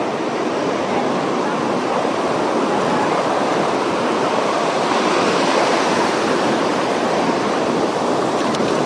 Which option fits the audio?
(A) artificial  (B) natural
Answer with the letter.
B